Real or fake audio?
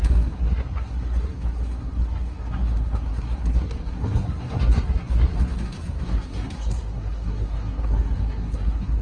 fake